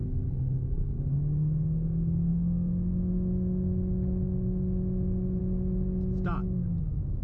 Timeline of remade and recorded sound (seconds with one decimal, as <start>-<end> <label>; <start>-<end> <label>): 0.0-1.1 remade; 1.1-7.2 recorded